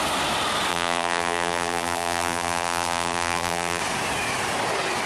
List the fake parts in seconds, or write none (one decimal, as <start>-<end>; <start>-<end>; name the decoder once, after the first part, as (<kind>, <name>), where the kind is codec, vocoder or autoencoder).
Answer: 0.7-3.8 (vocoder, BigVGAN v2)